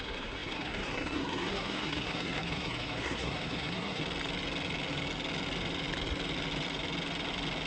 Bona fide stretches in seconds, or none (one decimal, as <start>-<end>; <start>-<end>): 4.0-7.7